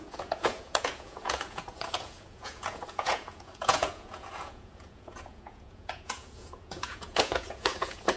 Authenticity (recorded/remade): remade